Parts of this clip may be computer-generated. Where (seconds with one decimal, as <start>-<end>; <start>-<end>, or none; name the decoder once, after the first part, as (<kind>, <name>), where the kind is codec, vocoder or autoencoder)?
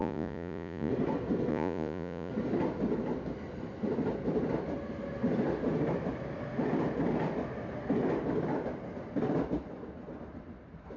0.0-0.9 (vocoder, Vocos); 1.5-2.3